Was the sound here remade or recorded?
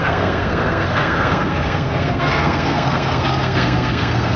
remade